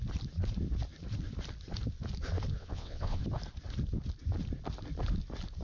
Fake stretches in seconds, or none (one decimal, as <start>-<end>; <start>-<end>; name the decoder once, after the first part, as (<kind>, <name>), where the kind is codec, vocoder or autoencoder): 2.6-3.2 (vocoder, WaveNeXt)